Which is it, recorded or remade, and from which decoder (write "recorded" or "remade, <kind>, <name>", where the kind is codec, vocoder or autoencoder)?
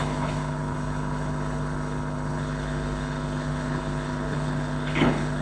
remade, codec, HILCodec